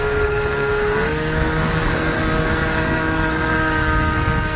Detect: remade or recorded remade